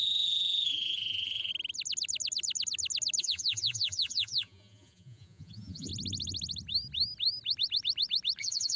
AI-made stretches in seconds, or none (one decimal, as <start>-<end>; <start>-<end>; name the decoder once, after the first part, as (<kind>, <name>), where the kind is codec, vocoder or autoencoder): 0.0-1.5 (vocoder, Vocos); 3.2-5.9; 8.4-8.8